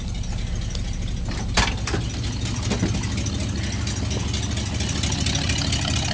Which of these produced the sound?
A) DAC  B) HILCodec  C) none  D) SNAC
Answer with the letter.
C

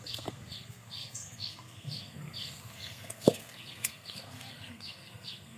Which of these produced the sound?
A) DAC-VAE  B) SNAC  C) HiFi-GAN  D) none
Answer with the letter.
B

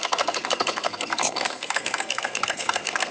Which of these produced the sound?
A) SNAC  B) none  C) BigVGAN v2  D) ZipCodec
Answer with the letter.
A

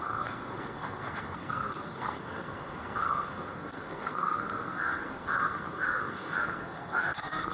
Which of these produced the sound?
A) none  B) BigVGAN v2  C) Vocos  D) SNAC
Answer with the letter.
D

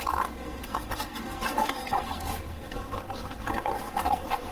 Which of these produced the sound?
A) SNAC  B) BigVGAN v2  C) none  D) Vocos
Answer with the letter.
A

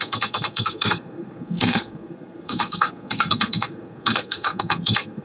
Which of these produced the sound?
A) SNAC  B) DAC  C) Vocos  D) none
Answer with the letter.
A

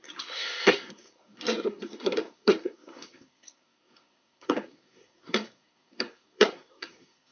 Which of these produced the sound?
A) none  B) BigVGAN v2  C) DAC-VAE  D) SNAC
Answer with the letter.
D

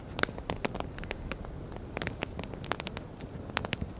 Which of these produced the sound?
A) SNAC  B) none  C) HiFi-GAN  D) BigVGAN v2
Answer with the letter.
B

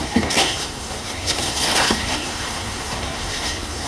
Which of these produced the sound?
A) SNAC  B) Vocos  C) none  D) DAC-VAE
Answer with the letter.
A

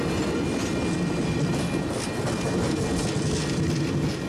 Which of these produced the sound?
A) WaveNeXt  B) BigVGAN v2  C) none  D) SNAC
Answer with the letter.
C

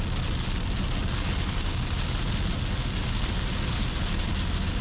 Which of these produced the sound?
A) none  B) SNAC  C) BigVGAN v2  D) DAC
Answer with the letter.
A